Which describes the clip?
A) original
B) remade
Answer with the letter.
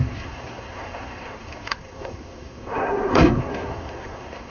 B